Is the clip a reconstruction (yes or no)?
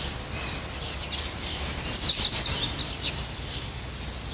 no